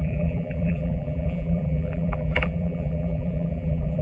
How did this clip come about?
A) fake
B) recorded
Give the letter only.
A